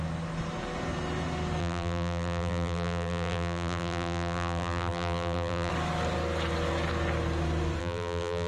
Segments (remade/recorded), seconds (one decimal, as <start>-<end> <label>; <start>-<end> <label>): 0.0-1.6 recorded; 1.6-5.7 remade; 5.7-7.8 recorded; 7.8-8.5 remade